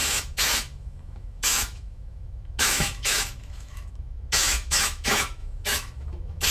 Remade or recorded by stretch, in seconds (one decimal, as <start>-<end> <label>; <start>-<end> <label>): 0.0-6.5 remade